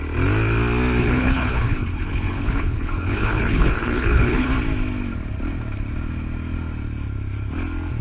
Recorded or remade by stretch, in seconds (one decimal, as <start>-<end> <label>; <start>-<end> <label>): 0.0-1.0 recorded; 1.0-4.5 remade; 4.5-8.0 recorded